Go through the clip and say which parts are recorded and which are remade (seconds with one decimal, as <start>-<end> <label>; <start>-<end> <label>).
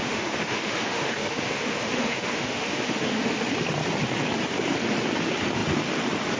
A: 0.0-3.5 remade; 3.5-6.4 recorded